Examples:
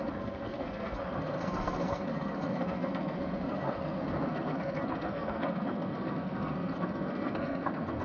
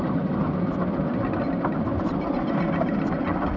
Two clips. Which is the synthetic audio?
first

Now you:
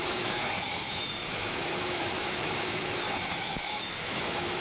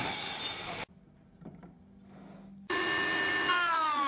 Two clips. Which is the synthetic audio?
first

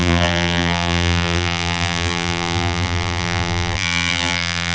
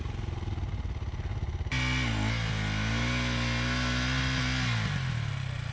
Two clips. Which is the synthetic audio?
first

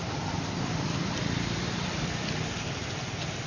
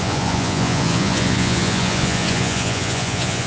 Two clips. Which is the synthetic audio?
second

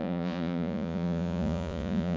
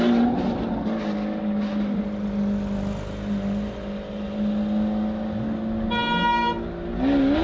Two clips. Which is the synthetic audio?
first